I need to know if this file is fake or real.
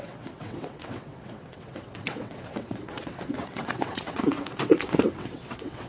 fake